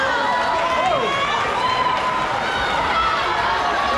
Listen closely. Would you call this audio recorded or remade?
recorded